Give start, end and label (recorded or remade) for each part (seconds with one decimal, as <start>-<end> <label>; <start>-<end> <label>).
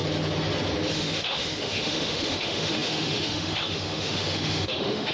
0.0-0.9 recorded; 0.9-5.1 remade